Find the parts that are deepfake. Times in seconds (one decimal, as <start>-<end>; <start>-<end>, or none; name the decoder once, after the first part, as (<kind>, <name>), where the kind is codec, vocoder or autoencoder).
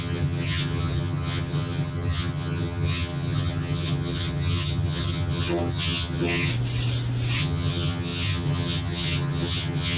0.0-6.5 (vocoder, HiFi-GAN); 7.4-10.0